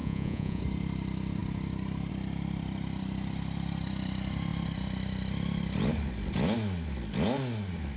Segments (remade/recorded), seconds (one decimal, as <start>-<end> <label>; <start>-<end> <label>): 0.0-0.6 remade; 0.6-8.0 recorded